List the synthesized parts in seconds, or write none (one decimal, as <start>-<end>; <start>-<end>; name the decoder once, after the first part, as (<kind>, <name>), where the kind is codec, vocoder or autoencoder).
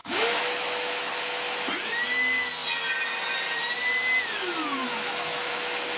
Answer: 0.0-1.1 (autoencoder, DAC-VAE); 4.8-5.5